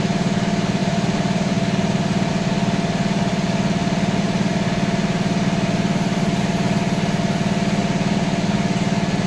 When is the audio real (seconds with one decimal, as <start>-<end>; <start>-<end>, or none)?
0.0-0.8; 2.3-3.3; 4.5-9.3